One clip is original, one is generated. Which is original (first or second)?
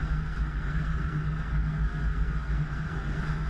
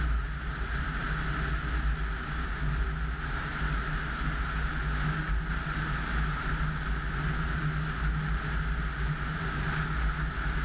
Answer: second